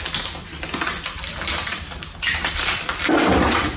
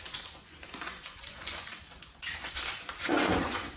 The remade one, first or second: second